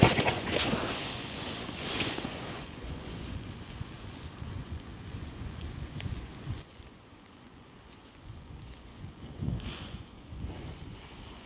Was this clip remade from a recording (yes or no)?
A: yes